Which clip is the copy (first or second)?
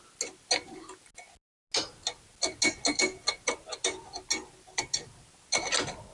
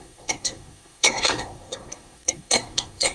second